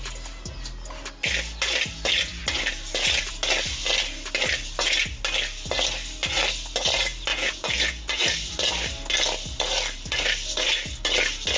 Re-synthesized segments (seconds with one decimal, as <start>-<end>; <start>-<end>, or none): 7.3-8.2